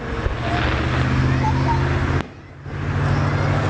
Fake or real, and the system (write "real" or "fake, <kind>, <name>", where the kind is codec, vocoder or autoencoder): real